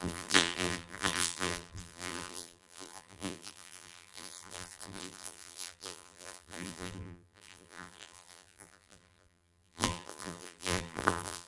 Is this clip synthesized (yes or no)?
yes